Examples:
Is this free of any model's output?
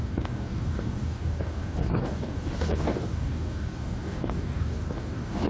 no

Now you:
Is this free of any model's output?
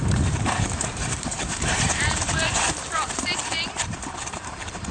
no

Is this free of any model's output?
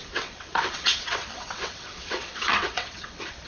no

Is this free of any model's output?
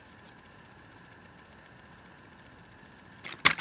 yes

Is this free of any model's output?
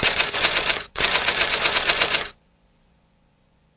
no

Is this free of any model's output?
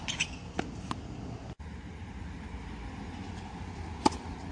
yes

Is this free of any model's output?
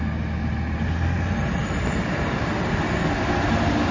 yes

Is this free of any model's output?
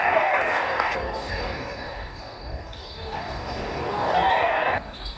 no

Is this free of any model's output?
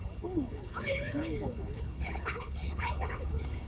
no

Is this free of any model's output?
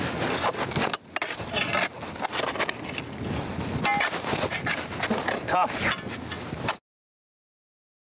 yes